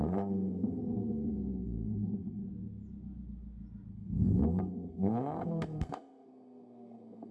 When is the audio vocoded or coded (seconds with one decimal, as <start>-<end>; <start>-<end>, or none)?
0.0-2.4; 3.9-7.3